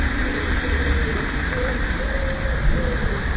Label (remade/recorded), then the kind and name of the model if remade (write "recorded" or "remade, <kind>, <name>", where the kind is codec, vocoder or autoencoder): recorded